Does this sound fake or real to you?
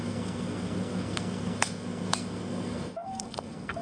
fake